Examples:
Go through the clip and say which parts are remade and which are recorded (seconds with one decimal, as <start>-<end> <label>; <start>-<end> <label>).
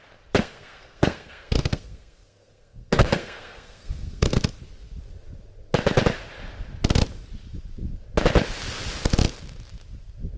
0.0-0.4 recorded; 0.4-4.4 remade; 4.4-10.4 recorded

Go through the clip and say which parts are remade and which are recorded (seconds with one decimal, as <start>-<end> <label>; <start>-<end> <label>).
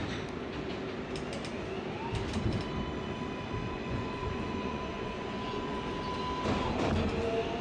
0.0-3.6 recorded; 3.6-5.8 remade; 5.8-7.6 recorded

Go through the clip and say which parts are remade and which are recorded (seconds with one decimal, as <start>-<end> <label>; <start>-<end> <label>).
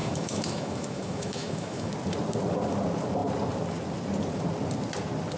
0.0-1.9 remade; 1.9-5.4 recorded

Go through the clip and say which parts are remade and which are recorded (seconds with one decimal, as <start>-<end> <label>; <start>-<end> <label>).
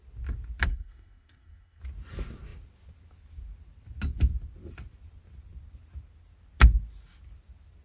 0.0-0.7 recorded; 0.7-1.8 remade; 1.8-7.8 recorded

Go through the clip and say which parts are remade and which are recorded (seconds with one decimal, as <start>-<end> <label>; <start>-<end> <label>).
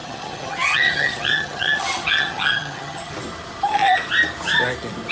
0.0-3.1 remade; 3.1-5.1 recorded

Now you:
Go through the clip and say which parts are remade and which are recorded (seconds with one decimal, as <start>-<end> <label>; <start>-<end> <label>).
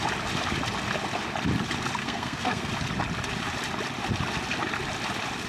0.0-2.0 recorded; 2.0-2.7 remade; 2.7-5.5 recorded